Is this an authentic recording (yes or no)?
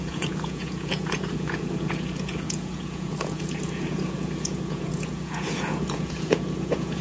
no